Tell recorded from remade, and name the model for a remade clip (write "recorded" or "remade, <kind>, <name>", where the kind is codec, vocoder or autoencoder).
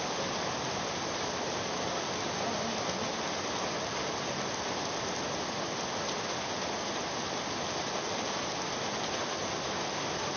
recorded